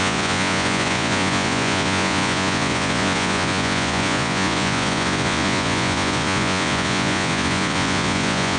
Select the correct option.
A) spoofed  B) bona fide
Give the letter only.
A